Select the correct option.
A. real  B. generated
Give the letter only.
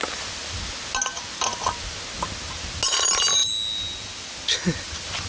A